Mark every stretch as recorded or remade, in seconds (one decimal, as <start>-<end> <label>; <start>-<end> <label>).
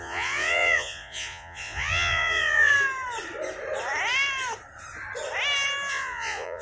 0.0-2.7 remade; 2.7-5.9 recorded; 5.9-6.6 remade